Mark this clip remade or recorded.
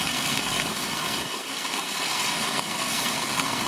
remade